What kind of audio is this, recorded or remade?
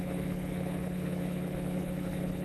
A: remade